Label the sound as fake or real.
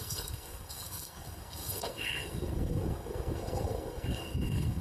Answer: fake